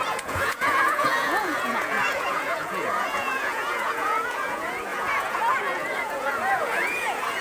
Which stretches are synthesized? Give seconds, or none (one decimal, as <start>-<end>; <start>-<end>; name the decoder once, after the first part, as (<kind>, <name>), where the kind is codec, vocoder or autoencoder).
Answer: 0.0-7.4 (vocoder, Vocos)